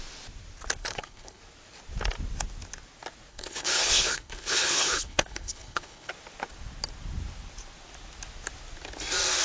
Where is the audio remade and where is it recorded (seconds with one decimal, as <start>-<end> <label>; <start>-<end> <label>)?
0.0-0.8 recorded; 0.8-1.4 remade; 1.4-3.3 recorded; 3.3-6.1 remade; 6.1-9.4 recorded